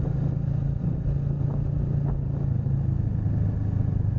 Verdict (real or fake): real